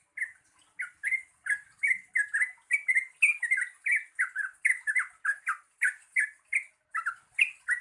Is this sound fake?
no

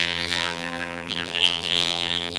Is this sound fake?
yes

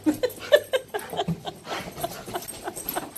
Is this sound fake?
no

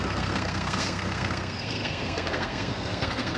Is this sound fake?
yes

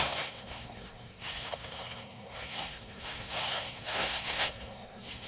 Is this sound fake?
yes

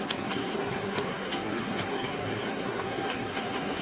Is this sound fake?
yes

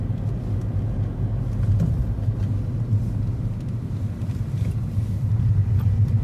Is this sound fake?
no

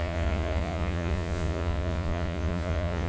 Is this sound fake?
yes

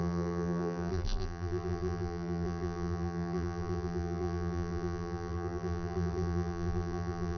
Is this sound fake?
yes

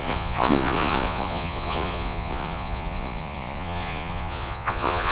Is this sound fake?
yes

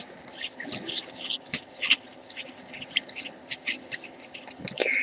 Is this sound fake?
no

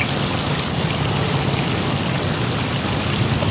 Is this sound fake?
no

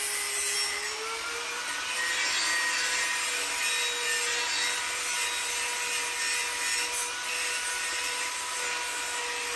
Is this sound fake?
no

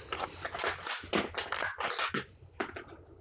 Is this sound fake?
no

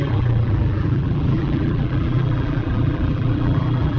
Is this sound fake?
yes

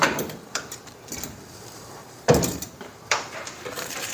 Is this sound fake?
yes